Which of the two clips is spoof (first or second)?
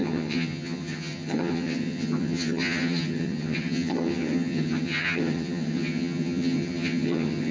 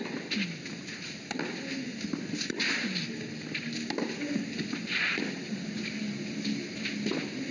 first